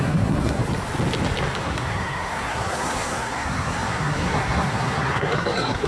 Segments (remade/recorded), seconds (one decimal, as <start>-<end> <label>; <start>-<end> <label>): 0.0-0.6 remade; 0.6-1.6 recorded; 1.6-5.9 remade